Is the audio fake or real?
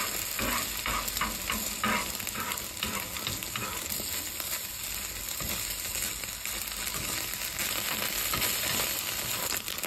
real